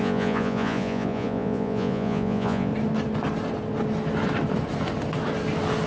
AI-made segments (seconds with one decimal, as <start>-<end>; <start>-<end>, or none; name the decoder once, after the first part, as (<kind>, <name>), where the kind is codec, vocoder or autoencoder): 0.0-2.7 (vocoder, Vocos)